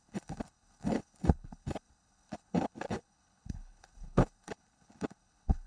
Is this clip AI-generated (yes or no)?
yes